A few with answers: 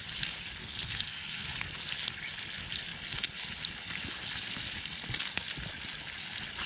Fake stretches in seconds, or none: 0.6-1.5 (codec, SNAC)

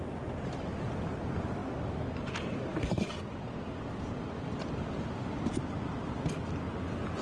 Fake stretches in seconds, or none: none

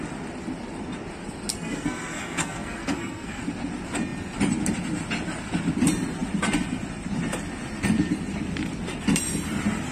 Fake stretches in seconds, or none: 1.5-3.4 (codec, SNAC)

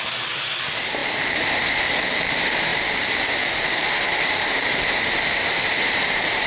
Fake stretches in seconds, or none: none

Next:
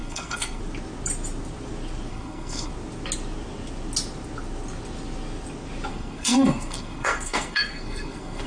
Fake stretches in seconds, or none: 0.0-0.6 (codec, SNAC); 2.1-2.7; 5.9-8.5

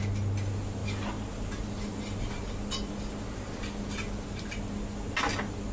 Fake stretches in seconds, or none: none

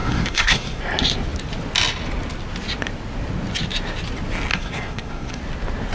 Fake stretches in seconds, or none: 0.0-0.8 (codec, SNAC); 4.5-5.4

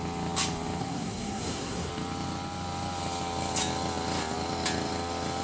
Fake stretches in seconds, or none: 0.8-1.9 (codec, SNAC)